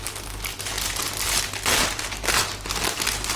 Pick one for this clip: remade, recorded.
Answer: recorded